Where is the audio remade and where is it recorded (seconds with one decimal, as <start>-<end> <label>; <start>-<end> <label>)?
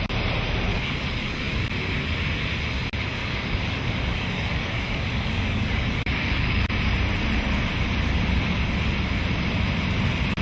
0.0-0.7 recorded; 0.7-1.7 remade; 1.7-3.2 recorded; 3.2-6.7 remade; 6.7-10.4 recorded